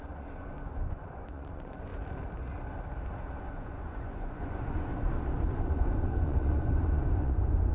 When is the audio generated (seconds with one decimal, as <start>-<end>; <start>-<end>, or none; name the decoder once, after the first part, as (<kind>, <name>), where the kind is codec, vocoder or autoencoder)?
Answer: 0.0-1.9 (vocoder, Vocos); 3.5-4.9; 5.6-7.7